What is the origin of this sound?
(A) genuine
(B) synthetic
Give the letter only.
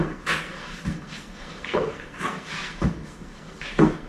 B